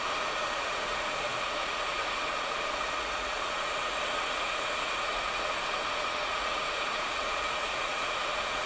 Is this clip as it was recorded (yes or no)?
no